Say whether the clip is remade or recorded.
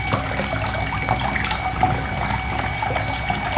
recorded